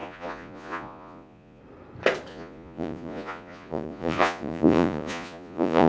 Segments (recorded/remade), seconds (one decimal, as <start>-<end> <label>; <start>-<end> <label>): 0.0-1.6 remade; 1.6-2.3 recorded; 2.3-5.9 remade